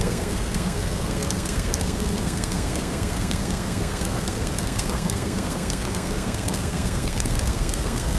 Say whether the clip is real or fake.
fake